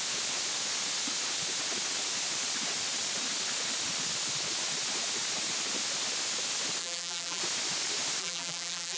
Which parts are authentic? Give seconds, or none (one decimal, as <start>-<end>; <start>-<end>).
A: 0.0-6.8; 7.4-8.2